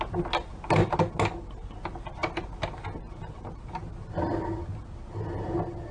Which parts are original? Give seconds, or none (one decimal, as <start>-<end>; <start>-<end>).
0.0-5.9